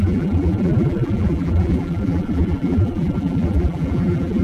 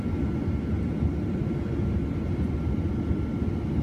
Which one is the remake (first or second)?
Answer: first